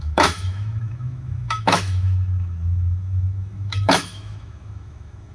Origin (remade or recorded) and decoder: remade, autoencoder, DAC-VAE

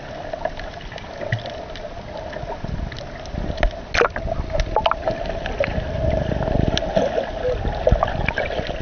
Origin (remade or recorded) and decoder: recorded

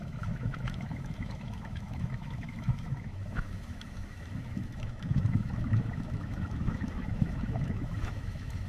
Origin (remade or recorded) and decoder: remade, autoencoder, DAC-VAE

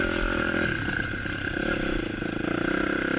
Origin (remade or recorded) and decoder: recorded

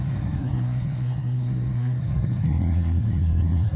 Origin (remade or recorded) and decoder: remade, codec, SNAC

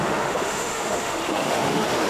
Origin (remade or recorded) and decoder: remade, autoencoder, DAC-VAE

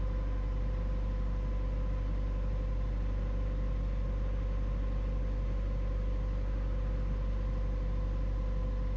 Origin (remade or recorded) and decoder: recorded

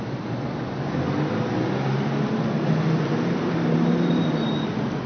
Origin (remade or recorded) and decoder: recorded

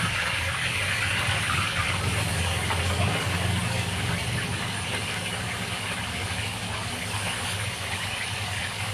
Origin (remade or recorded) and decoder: remade, codec, DAC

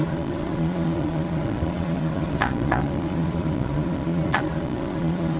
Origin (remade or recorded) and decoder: remade, vocoder, Vocos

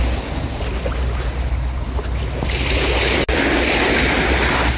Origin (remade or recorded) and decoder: recorded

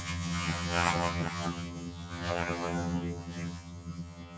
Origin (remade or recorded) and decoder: remade, vocoder, HiFi-GAN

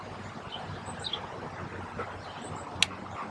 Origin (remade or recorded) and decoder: recorded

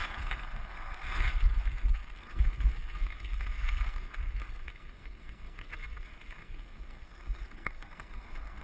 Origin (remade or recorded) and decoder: remade, codec, SNAC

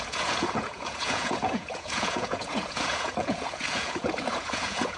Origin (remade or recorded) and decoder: remade, vocoder, Vocos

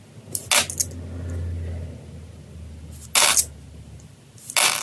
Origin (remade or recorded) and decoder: recorded